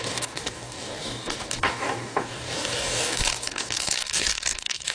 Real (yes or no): no